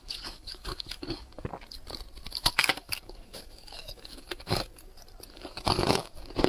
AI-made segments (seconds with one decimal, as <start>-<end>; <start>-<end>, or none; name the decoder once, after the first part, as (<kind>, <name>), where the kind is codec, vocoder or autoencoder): 0.0-1.5 (codec, DAC); 2.3-4.7; 5.3-6.5